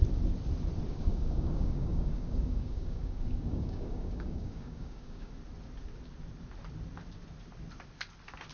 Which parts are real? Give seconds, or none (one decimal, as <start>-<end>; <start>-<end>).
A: 0.0-0.9; 5.3-8.5